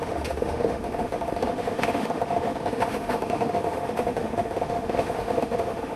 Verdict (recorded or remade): remade